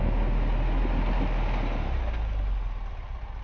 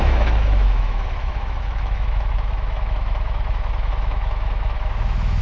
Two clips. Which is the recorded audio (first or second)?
first